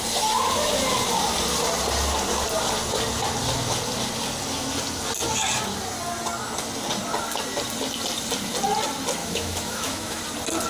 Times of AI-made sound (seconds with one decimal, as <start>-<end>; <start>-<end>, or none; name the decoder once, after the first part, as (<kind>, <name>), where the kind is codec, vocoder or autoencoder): 9.2-10.2 (autoencoder, DAC-VAE)